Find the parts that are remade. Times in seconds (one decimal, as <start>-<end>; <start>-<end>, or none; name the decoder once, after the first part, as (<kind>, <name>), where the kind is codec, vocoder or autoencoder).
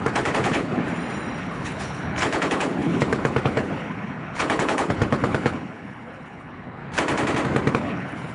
0.0-0.8 (codec, HILCodec); 1.4-6.8; 7.7-8.3